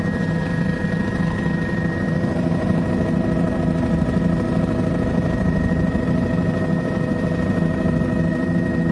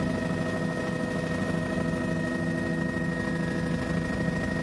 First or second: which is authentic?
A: second